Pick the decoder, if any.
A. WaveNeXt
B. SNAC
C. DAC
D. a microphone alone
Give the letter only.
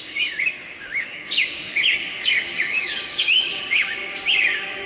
C